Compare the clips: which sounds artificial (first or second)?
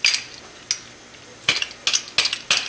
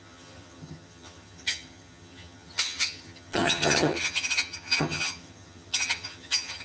second